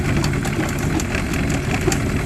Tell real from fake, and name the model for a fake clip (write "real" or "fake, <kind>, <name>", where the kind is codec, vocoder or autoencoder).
real